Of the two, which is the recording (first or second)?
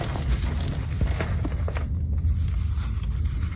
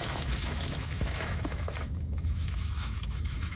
first